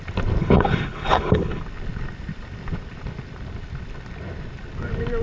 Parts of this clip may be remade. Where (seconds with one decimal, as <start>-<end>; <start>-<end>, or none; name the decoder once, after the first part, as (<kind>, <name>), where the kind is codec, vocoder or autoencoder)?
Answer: 0.4-1.6 (codec, HILCodec)